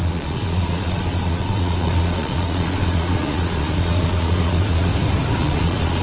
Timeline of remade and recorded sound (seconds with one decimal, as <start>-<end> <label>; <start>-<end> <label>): 0.0-4.9 remade; 4.9-5.4 recorded; 5.4-6.0 remade